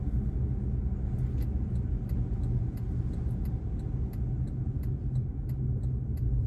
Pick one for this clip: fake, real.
real